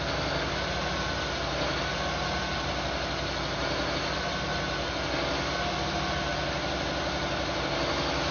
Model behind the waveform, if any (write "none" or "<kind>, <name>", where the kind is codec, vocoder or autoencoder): none